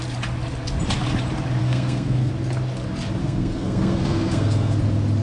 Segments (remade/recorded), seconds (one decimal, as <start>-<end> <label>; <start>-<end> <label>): 0.0-1.6 recorded; 1.6-2.3 remade; 2.3-3.2 recorded; 3.2-4.8 remade; 4.8-5.2 recorded